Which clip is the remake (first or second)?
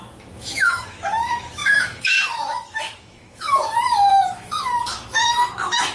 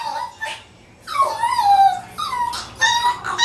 first